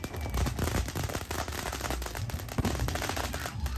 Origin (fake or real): real